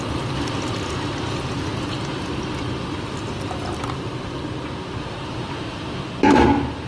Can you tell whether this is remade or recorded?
recorded